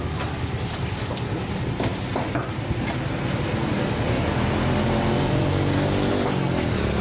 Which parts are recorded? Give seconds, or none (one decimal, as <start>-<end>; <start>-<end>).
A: 1.9-6.1